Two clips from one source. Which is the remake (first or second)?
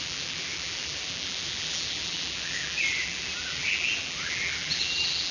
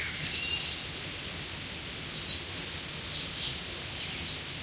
first